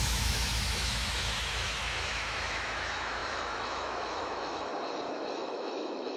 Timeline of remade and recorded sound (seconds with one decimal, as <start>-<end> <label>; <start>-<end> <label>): 0.0-4.7 remade; 4.7-5.3 recorded; 5.3-6.2 remade